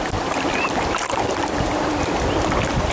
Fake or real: real